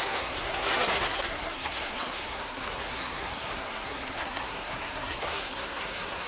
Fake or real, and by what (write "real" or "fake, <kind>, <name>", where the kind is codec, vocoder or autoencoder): fake, codec, SNAC